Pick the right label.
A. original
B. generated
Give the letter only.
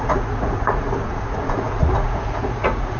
B